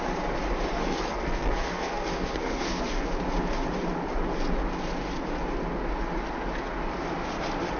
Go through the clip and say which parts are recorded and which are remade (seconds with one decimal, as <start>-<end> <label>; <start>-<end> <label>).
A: 0.0-0.8 recorded; 0.8-2.8 remade; 2.8-7.8 recorded